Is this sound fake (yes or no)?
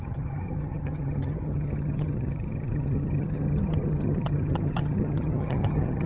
yes